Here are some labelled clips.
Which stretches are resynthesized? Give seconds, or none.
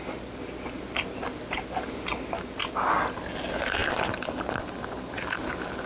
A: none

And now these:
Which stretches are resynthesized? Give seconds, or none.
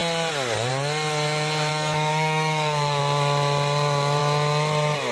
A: 1.7-3.0 (codec, DAC)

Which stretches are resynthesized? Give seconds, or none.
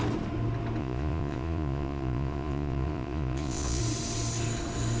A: 0.8-3.8 (vocoder, Vocos)